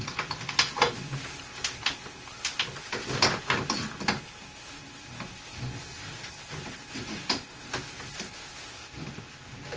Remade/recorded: recorded